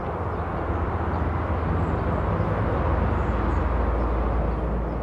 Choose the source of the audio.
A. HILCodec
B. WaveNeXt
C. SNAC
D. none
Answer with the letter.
D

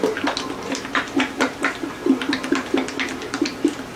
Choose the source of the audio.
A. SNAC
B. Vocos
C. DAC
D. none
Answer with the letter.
D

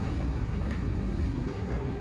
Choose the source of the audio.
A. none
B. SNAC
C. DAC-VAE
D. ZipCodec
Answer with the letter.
B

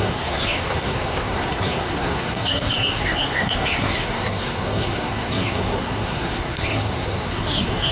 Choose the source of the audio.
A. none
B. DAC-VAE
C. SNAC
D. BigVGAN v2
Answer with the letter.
C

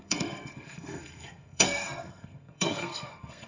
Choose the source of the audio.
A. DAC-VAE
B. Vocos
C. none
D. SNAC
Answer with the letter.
D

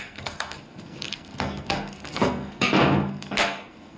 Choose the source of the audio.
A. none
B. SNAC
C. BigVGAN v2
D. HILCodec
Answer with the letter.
B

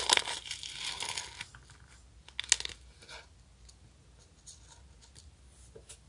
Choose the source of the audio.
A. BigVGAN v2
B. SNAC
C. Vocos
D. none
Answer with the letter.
D